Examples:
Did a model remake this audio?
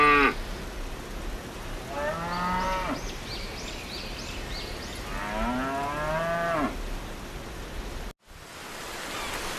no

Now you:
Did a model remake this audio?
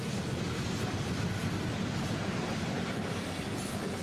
no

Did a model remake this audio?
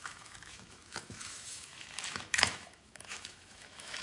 yes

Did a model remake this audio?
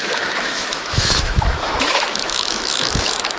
yes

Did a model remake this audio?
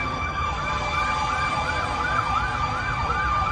no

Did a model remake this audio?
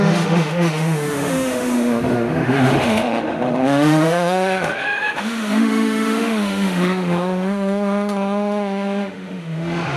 yes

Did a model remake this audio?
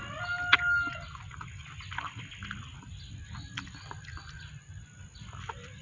no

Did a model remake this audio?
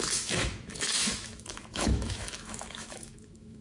yes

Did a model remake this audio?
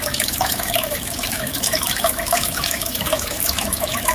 yes